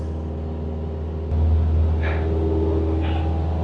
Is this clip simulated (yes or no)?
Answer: no